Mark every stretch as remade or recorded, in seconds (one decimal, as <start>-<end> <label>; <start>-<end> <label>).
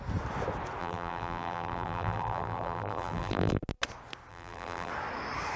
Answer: 0.0-0.8 recorded; 0.8-3.6 remade; 3.6-4.3 recorded; 4.3-4.9 remade; 4.9-5.6 recorded